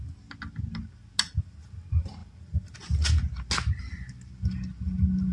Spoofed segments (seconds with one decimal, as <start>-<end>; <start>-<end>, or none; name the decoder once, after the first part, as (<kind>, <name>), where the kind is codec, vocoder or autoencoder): none